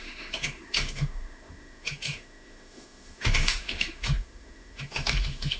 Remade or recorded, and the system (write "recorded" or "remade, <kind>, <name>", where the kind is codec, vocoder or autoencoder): remade, autoencoder, DAC-VAE